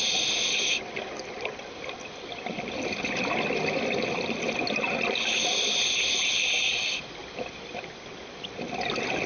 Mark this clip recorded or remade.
recorded